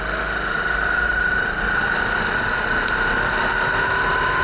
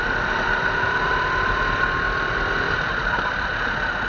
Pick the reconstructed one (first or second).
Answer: second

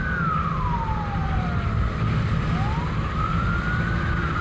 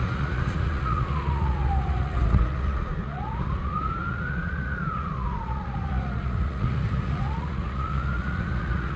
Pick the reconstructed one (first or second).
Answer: second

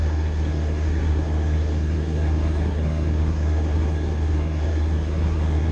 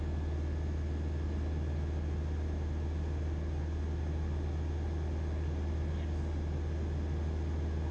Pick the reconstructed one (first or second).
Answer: first